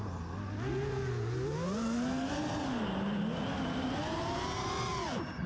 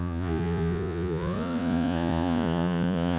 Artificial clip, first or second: second